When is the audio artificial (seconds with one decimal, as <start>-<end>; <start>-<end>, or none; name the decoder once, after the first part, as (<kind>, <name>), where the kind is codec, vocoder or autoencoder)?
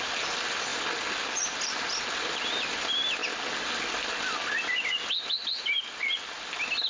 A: none